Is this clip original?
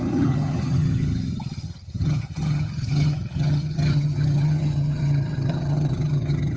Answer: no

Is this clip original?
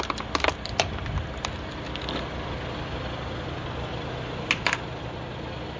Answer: yes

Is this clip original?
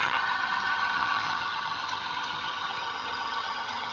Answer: no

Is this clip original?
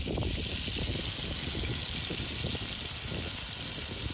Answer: yes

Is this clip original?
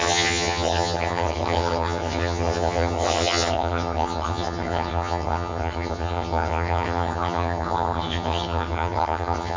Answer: no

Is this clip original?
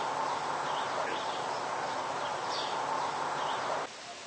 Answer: yes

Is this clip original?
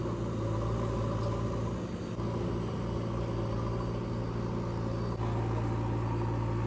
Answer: yes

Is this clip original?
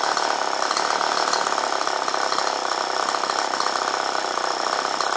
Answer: yes